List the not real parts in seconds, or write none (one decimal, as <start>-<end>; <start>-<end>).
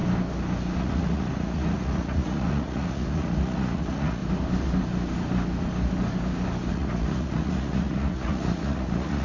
0.8-4.2; 6.7-9.2